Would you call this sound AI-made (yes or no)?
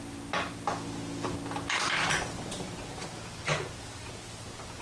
no